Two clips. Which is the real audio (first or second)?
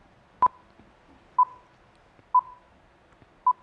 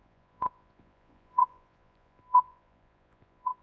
first